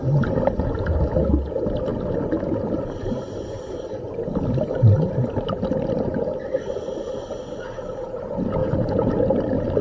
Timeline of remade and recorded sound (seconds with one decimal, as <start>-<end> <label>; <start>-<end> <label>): 0.0-8.6 recorded; 8.6-9.1 remade; 9.1-9.8 recorded